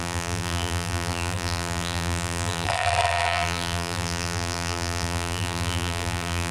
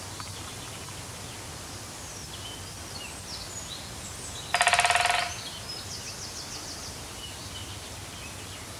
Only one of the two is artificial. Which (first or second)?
first